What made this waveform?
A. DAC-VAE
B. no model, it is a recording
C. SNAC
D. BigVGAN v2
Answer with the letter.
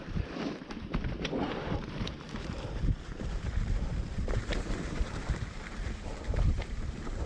D